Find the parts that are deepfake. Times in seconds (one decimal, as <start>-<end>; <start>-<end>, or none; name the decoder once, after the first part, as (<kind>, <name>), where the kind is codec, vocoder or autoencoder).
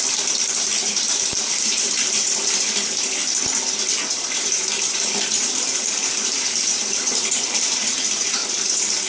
0.0-3.2 (vocoder, BigVGAN v2); 4.1-8.4